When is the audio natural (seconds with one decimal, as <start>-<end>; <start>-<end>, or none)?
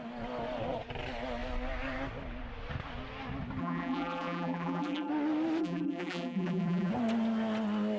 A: 0.0-3.6; 5.1-5.6; 6.9-8.0